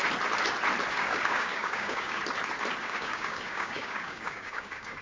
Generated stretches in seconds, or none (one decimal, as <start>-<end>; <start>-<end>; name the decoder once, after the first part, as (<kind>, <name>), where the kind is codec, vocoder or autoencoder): 0.9-2.2 (codec, DAC); 2.8-5.0